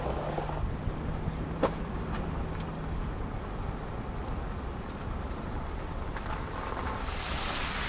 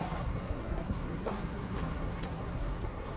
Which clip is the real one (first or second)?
first